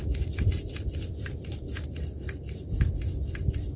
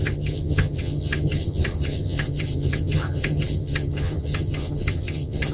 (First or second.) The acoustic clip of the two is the first